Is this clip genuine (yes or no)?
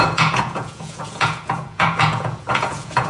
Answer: no